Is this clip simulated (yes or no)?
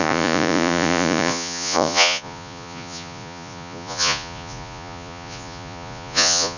yes